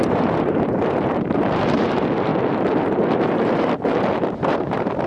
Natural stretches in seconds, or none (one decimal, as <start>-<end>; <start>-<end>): 2.3-3.2